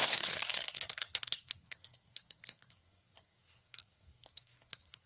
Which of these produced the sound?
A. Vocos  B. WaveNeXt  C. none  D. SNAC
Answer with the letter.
D